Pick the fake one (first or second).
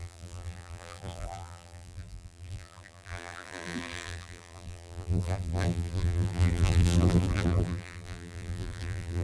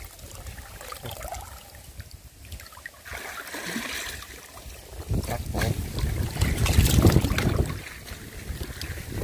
first